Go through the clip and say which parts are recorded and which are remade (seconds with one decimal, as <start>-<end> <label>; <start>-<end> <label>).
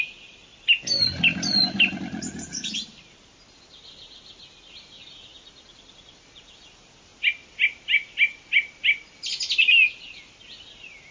0.0-2.5 recorded; 2.5-3.1 remade; 3.1-11.1 recorded